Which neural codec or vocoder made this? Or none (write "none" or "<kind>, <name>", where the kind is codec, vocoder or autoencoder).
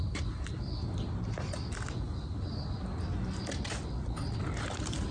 none